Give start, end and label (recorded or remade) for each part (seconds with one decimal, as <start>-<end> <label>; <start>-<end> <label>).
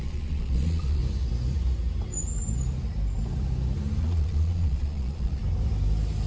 0.0-1.0 remade; 1.0-4.0 recorded; 4.0-5.4 remade; 5.4-6.3 recorded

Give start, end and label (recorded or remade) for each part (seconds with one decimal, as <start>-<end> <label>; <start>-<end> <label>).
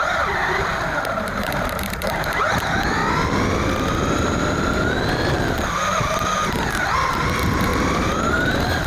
0.0-3.0 remade; 3.0-5.9 recorded; 5.9-8.9 remade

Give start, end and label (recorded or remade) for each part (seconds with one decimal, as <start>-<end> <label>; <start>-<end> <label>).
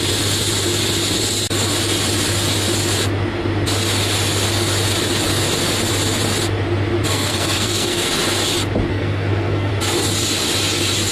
0.0-7.1 recorded; 7.1-8.1 remade; 8.1-8.9 recorded; 8.9-9.7 remade; 9.7-11.1 recorded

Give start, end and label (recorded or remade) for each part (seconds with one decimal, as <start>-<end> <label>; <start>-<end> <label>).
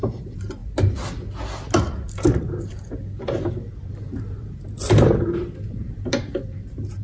0.0-0.6 remade; 0.6-3.2 recorded; 3.2-7.0 remade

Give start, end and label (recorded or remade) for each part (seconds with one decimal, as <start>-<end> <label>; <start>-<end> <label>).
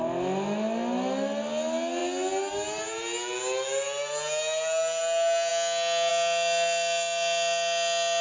0.0-8.2 recorded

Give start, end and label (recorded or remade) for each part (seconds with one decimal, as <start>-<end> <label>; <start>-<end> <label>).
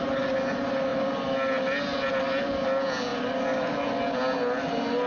0.0-5.1 recorded